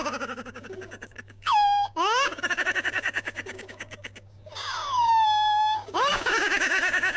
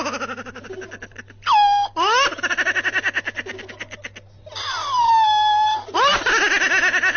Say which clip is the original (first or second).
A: second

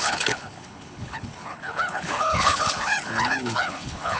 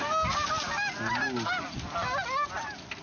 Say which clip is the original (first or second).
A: second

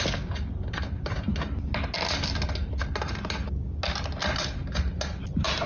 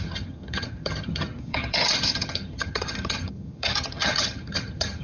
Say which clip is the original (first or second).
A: first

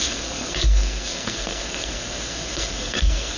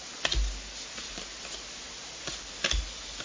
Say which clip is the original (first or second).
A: second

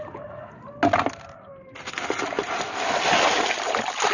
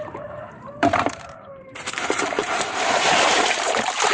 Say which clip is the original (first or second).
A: first